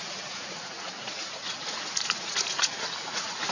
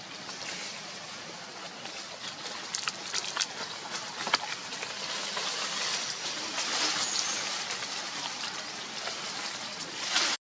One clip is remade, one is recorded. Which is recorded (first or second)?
second